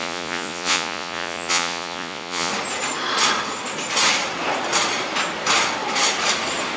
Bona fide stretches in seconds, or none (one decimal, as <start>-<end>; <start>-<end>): 2.5-6.8